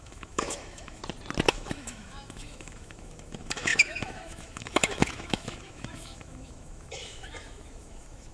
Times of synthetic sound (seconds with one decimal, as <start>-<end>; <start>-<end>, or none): 0.0-1.0; 1.5-8.3